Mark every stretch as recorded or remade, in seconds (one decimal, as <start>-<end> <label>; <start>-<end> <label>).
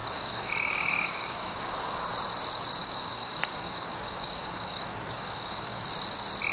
0.0-2.0 remade; 2.0-2.8 recorded; 2.8-5.8 remade; 5.8-6.5 recorded